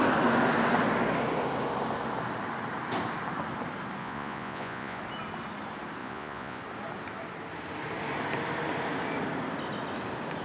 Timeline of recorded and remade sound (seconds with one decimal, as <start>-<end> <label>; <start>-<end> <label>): 0.0-4.0 recorded; 4.0-5.0 remade; 5.0-6.0 recorded; 6.0-6.6 remade; 6.6-10.4 recorded